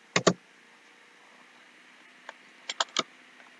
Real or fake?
real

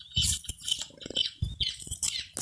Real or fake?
real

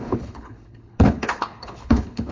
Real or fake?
fake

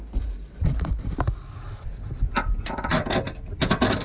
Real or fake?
real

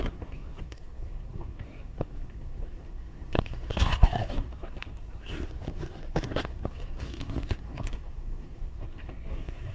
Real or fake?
fake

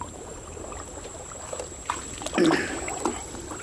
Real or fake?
fake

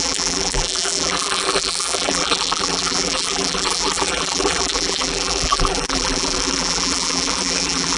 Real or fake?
fake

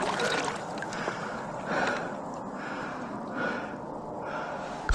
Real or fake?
real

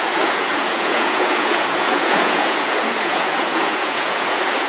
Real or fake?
fake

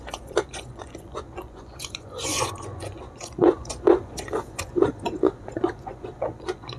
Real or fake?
fake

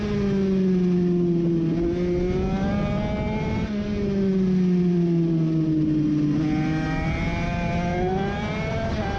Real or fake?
real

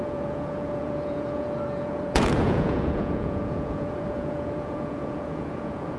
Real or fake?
fake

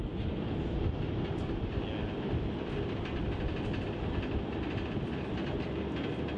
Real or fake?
real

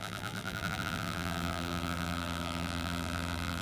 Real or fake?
fake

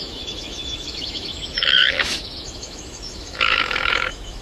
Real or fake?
fake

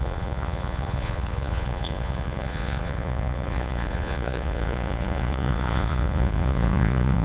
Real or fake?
fake